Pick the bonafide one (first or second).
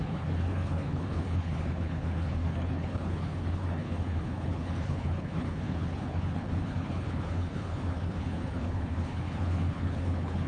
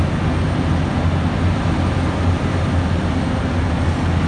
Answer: second